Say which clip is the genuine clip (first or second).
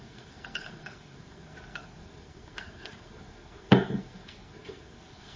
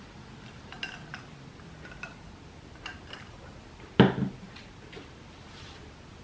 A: second